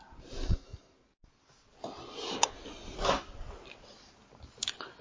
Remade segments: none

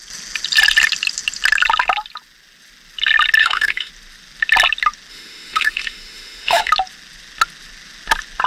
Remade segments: 3.4-3.9 (autoencoder, DAC-VAE); 5.1-6.7

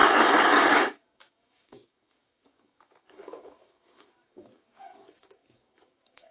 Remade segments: 0.0-6.3 (codec, DAC)

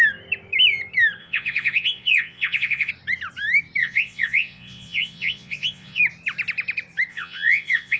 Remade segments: 1.2-2.9 (vocoder, Vocos); 3.8-6.0; 7.1-8.0